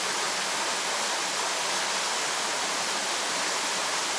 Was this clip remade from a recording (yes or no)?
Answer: no